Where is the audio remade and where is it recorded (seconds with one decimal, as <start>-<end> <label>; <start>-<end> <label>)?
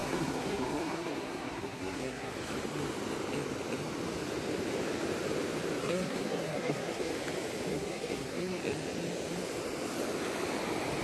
0.0-2.3 remade; 2.3-5.8 recorded; 5.8-7.1 remade; 7.1-7.7 recorded; 7.7-8.6 remade; 8.6-11.0 recorded